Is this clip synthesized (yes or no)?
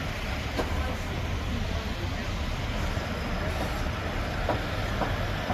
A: no